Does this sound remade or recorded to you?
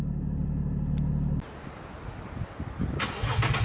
recorded